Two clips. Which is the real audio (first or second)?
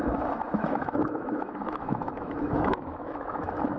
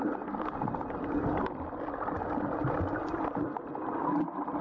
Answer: second